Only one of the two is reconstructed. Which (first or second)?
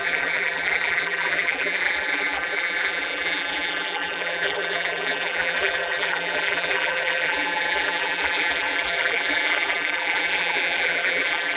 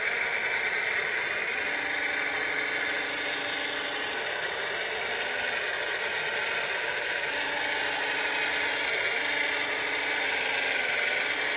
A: first